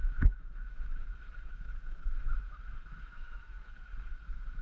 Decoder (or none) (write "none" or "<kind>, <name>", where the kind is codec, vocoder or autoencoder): autoencoder, DAC-VAE